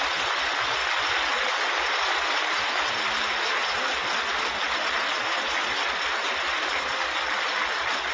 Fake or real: real